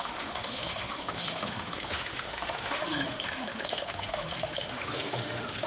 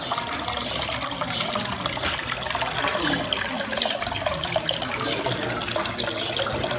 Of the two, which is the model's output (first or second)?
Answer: first